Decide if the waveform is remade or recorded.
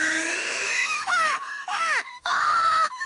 remade